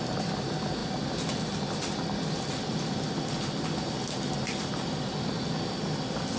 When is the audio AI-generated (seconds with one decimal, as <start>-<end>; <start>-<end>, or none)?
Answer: none